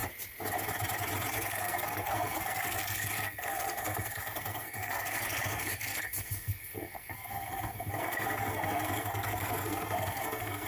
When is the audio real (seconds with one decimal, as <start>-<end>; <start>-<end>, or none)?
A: 0.0-1.3